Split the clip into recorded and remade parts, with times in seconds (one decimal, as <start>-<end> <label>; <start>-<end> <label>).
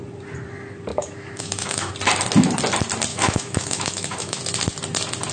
0.0-0.9 recorded; 0.9-1.9 remade; 1.9-3.1 recorded; 3.1-4.4 remade; 4.4-5.3 recorded